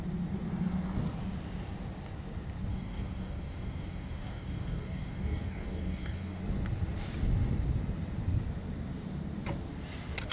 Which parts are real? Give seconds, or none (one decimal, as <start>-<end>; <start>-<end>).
0.0-2.7; 6.4-10.3